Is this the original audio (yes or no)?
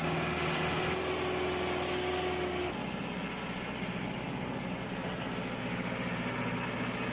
yes